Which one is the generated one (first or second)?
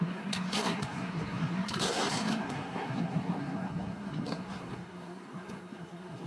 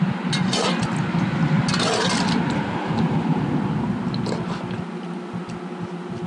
first